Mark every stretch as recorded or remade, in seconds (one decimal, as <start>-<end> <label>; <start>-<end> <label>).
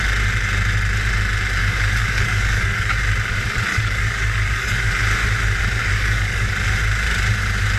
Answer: 0.0-1.6 recorded; 1.6-3.0 remade; 3.0-3.7 recorded; 3.7-4.9 remade; 4.9-5.8 recorded; 5.8-6.5 remade; 6.5-7.8 recorded